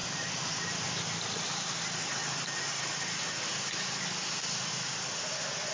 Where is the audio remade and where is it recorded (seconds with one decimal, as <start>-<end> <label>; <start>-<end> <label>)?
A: 0.0-5.7 recorded